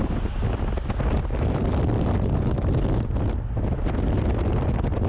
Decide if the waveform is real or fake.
real